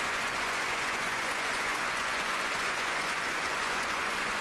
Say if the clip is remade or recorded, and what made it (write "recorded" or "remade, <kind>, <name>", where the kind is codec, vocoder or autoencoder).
remade, vocoder, Vocos